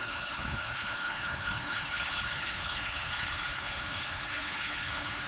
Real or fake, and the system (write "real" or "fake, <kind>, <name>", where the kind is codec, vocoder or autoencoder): fake, codec, HILCodec